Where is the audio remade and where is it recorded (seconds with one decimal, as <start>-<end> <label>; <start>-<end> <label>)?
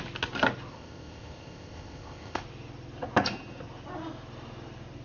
0.0-0.7 recorded; 0.7-2.4 remade; 2.4-5.0 recorded